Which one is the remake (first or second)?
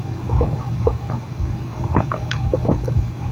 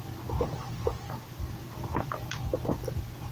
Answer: first